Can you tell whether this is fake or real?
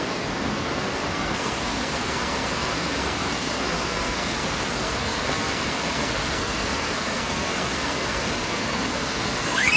fake